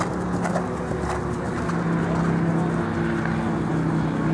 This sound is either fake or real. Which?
real